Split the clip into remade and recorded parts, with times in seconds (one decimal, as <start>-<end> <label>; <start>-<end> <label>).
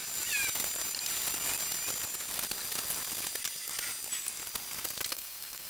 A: 0.0-5.1 recorded; 5.1-5.7 remade